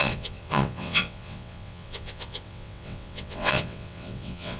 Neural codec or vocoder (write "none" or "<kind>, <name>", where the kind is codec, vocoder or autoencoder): vocoder, WaveNeXt